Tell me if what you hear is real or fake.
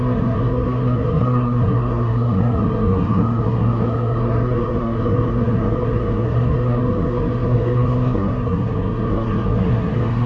fake